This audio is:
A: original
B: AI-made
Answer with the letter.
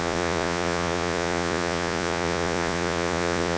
B